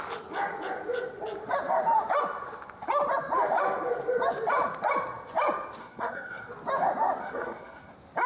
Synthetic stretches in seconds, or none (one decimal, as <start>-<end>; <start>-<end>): 5.8-6.5; 7.2-7.9